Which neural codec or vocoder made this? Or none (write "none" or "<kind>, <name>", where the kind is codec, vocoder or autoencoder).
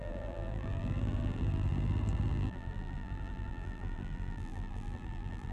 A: vocoder, BigVGAN v2